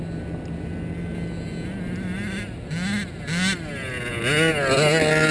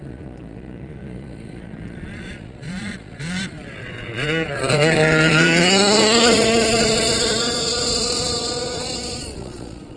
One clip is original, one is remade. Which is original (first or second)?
first